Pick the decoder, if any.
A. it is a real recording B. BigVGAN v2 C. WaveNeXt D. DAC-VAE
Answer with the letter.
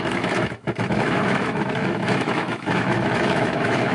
D